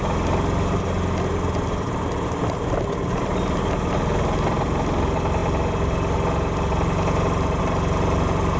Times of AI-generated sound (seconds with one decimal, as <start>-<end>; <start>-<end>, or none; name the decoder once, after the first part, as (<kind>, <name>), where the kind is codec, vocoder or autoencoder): none